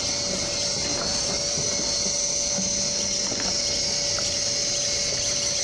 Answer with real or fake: real